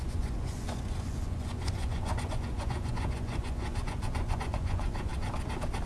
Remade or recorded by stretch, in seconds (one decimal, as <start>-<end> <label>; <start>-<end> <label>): 0.0-5.1 remade; 5.1-5.9 recorded